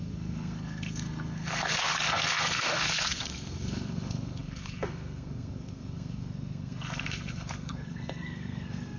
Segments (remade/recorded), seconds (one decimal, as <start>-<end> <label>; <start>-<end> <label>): 0.0-9.0 remade